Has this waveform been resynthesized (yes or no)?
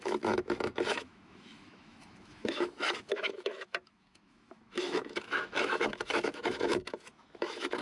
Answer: yes